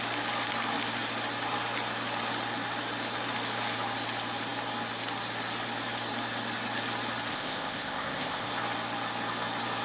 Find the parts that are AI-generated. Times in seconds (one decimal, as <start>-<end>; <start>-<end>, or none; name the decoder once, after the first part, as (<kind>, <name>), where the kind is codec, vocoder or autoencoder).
7.3-8.5 (codec, ZipCodec)